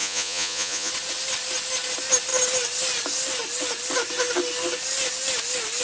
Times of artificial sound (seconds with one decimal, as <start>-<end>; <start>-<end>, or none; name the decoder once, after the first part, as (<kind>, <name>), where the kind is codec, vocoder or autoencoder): 0.0-0.9 (vocoder, Vocos)